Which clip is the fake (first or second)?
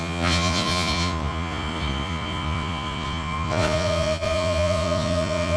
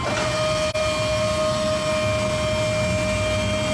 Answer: first